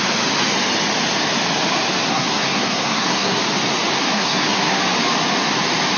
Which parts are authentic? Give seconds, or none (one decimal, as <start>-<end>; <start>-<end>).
0.0-2.1; 3.4-3.9; 4.8-6.0